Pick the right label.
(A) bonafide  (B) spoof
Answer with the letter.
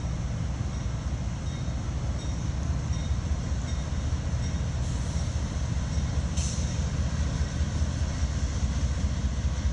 A